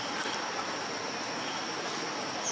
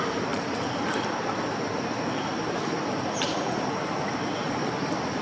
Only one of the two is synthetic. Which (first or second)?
second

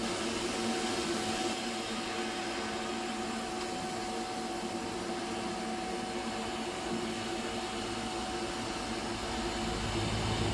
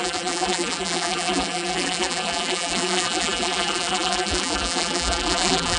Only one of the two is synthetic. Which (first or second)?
second